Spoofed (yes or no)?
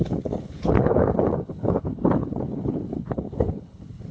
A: yes